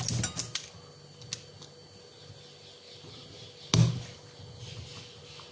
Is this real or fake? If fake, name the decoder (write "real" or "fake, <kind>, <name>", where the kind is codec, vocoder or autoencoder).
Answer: real